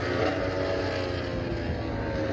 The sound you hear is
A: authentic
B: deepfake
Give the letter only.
A